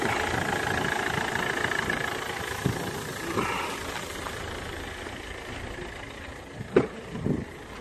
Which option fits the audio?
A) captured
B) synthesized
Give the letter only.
B